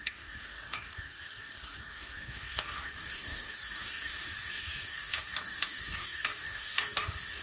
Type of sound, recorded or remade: remade